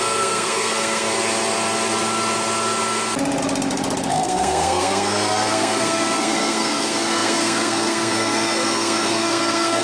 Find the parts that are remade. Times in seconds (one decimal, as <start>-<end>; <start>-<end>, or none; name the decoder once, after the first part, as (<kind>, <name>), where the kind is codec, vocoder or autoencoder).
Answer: 0.0-1.1 (codec, SNAC); 4.1-9.8